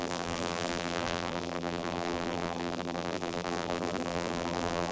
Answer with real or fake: fake